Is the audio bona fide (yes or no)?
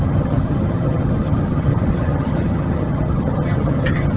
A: no